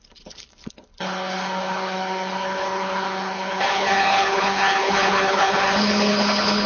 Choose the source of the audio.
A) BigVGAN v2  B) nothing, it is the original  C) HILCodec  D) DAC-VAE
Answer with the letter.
C